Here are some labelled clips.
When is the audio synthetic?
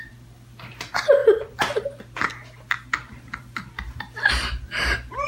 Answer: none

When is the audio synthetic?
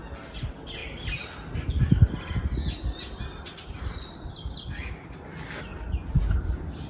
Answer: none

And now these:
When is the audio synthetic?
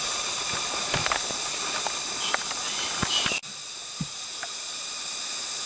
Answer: none